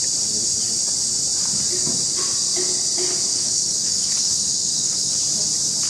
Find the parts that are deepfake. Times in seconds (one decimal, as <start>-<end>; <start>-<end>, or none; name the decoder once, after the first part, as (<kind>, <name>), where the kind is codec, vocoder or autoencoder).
3.3-5.1 (codec, DAC)